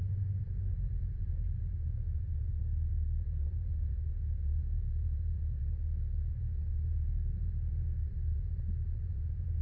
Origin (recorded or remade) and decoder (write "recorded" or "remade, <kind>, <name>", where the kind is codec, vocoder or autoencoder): remade, vocoder, BigVGAN v2